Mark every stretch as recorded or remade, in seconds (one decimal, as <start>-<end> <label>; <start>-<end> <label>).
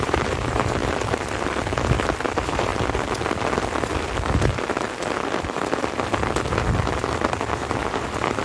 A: 0.0-0.8 remade; 0.8-2.3 recorded; 2.3-2.7 remade; 2.7-7.5 recorded; 7.5-8.4 remade